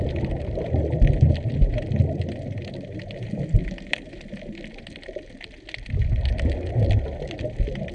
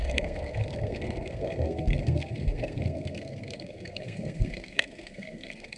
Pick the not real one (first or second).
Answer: second